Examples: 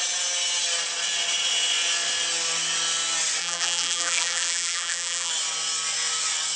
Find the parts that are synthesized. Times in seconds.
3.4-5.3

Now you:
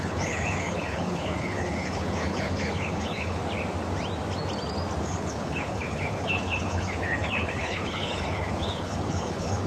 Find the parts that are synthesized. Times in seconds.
0.0-3.4; 5.0-9.7

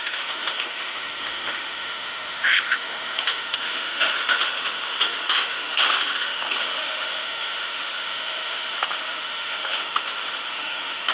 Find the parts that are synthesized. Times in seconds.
0.0-11.1

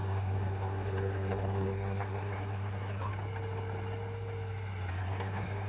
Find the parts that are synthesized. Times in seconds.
0.0-3.1; 4.9-5.7

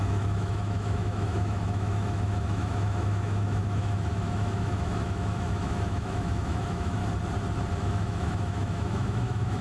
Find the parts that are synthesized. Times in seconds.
0.0-7.0; 7.8-9.6

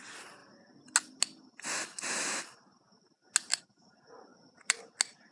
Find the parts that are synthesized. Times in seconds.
4.3-4.8

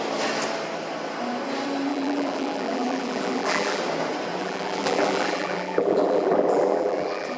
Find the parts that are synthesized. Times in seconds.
1.9-3.8; 4.4-7.4